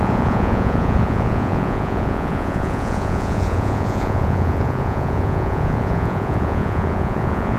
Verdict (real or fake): fake